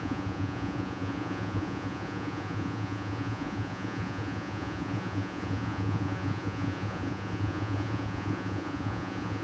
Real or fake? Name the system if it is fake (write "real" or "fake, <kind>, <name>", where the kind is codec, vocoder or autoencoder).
fake, vocoder, Vocos